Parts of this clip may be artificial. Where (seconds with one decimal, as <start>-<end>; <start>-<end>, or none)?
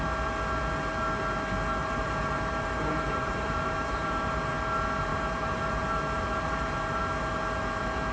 1.8-4.5; 5.1-7.0